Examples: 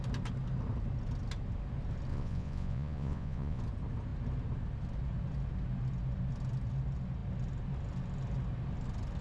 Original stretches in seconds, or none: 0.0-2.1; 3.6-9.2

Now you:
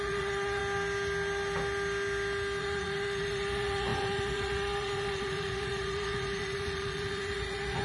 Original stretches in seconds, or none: 0.6-2.6